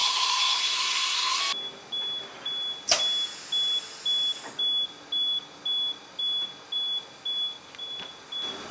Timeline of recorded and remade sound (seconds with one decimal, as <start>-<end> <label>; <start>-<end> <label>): 0.0-1.4 remade; 1.4-8.7 recorded